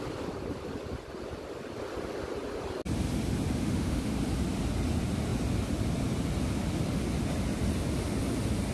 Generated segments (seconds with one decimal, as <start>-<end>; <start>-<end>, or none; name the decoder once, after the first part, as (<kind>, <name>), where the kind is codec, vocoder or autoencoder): 3.6-4.1 (autoencoder, DAC-VAE)